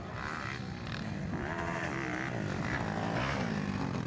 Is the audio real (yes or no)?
yes